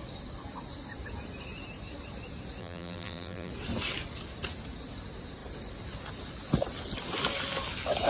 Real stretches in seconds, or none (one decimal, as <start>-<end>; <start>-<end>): 0.0-2.6; 3.5-8.1